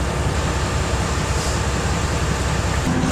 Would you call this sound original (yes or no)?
yes